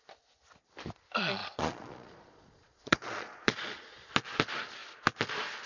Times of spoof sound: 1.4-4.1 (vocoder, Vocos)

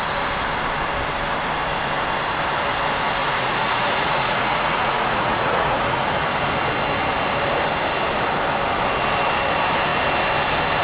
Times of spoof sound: 3.2-6.0 (vocoder, Vocos)

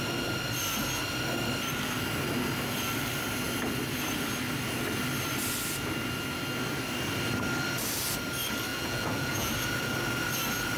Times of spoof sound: 8.7-9.5 (vocoder, Vocos)

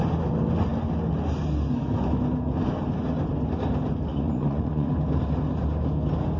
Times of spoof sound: 4.1-4.9 (vocoder, Vocos)